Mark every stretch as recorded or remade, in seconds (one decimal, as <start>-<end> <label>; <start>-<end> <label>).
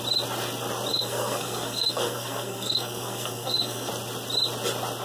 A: 0.0-0.9 recorded; 0.9-3.9 remade; 3.9-5.0 recorded